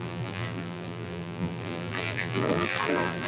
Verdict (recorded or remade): remade